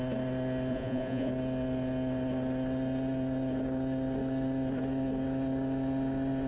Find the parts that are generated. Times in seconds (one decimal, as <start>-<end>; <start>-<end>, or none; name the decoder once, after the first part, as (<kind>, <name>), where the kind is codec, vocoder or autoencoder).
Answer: 0.7-1.3 (vocoder, Vocos)